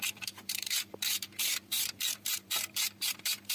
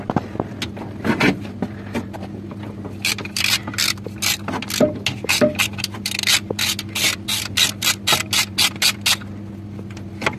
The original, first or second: second